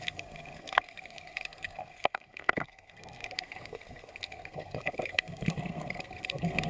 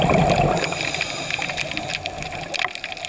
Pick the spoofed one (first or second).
first